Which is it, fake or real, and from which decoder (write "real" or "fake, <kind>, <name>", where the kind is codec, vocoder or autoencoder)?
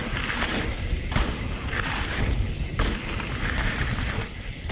fake, vocoder, BigVGAN v2